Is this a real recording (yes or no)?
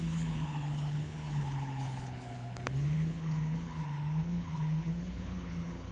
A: no